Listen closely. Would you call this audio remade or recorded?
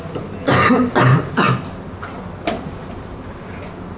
recorded